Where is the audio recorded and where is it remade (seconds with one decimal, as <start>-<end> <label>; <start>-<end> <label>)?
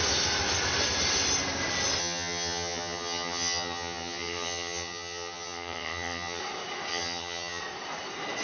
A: 0.0-2.0 recorded; 2.0-6.4 remade; 6.4-6.9 recorded; 6.9-7.6 remade; 7.6-8.4 recorded